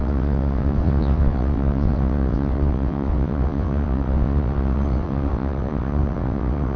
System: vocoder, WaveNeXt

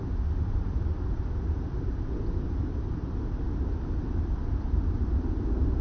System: none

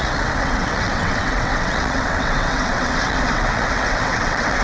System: vocoder, WaveNeXt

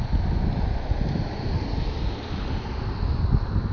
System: none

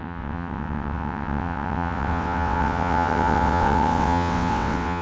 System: vocoder, WaveNeXt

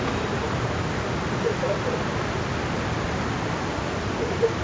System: none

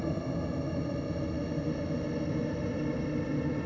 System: none